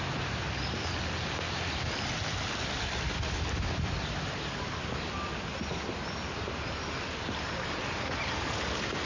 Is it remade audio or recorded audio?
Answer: recorded